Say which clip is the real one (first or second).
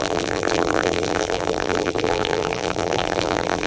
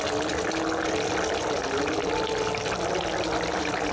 second